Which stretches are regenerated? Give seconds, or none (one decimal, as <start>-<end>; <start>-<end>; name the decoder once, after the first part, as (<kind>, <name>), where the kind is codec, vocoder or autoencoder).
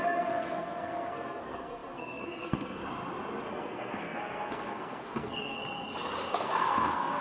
0.0-2.8 (codec, SNAC); 3.5-5.6; 6.3-7.2